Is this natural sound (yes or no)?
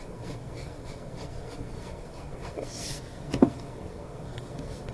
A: no